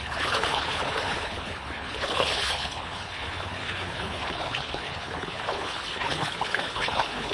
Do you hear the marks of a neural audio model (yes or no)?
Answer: yes